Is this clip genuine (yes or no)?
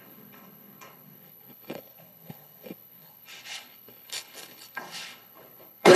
no